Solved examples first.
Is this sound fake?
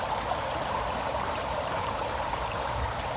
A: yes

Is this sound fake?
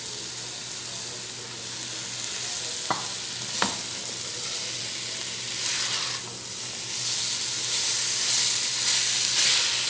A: no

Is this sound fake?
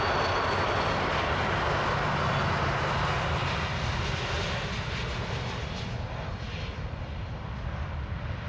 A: no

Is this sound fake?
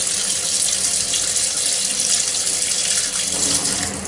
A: no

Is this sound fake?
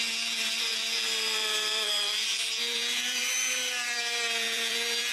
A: yes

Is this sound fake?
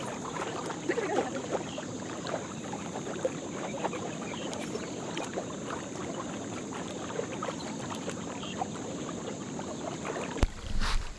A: yes